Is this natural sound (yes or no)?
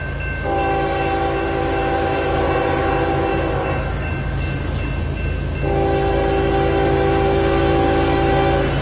yes